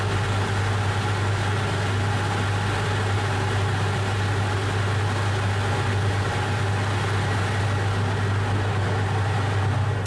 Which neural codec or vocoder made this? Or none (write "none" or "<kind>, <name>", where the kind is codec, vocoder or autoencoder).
none